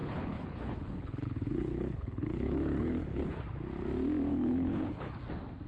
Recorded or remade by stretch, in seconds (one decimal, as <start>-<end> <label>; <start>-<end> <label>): 0.0-3.4 remade; 3.4-4.3 recorded; 4.3-5.2 remade; 5.2-5.7 recorded